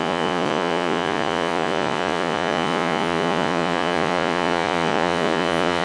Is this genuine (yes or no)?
no